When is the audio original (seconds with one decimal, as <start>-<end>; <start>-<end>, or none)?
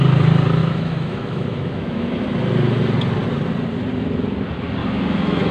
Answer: 0.0-0.6; 2.2-4.8